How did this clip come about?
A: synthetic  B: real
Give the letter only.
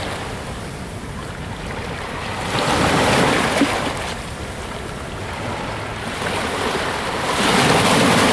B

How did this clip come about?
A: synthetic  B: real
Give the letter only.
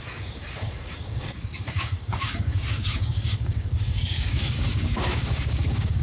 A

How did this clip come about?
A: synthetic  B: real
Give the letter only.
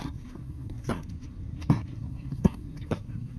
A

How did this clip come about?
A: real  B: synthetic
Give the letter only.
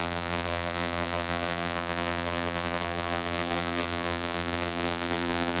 B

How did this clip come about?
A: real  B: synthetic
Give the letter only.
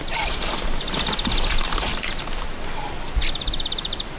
A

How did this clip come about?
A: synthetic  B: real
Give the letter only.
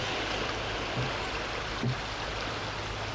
B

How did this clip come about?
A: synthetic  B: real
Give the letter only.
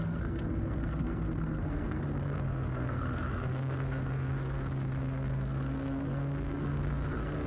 A